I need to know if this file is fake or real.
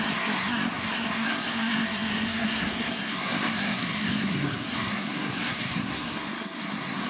fake